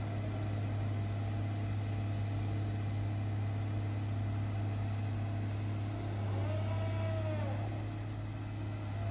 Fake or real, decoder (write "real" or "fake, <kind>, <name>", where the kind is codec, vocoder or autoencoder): real